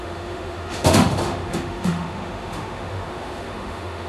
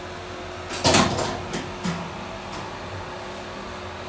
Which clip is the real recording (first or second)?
second